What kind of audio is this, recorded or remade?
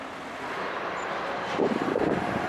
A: recorded